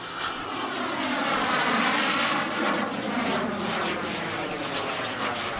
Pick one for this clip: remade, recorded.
recorded